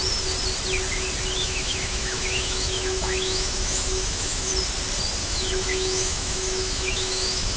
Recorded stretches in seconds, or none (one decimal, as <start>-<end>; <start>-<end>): 0.0-1.4; 4.5-5.2